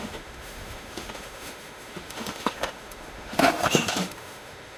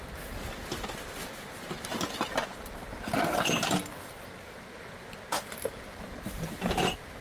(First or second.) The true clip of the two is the second